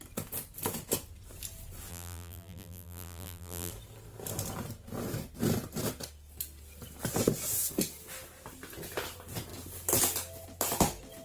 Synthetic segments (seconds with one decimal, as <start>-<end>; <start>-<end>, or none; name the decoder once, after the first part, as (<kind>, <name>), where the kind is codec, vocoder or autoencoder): 1.9-3.7 (vocoder, BigVGAN v2)